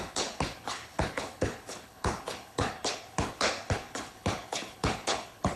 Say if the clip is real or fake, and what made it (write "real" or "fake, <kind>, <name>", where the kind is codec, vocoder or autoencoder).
fake, codec, HILCodec